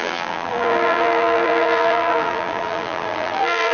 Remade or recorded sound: remade